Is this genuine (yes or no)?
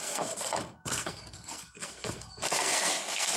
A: no